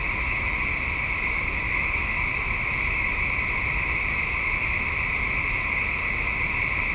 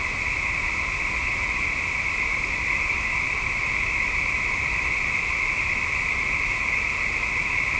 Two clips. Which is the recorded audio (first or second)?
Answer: first